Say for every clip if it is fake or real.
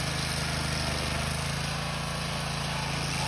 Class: real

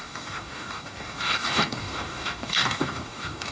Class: fake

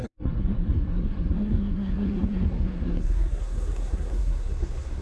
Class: fake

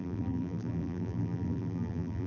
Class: fake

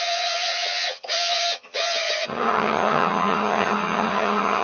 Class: fake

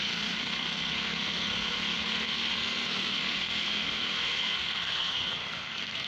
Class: fake